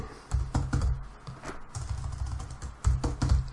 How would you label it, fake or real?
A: real